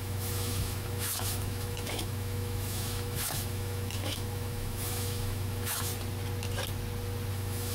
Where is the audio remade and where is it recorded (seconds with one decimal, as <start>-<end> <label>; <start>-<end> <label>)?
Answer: 0.0-5.9 remade; 5.9-7.3 recorded; 7.3-7.7 remade